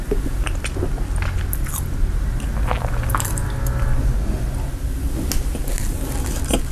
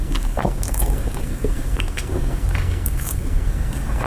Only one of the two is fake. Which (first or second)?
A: second